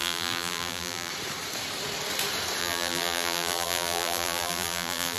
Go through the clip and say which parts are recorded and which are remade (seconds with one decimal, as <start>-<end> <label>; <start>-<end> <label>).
0.0-1.1 remade; 1.1-2.6 recorded; 2.6-5.2 remade